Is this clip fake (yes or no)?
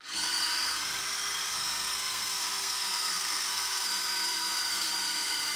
yes